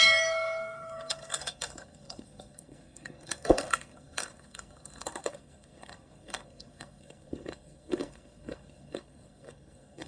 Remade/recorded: remade